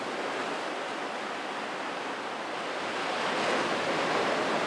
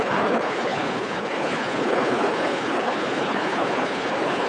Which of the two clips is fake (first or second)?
second